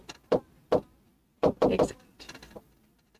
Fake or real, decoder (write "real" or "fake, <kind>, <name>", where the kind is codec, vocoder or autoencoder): fake, vocoder, BigVGAN v2